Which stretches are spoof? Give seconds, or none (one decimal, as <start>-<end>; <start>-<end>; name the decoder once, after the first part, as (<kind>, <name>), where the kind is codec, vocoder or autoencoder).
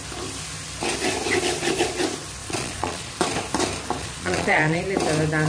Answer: 2.4-3.1 (vocoder, Vocos); 4.0-4.8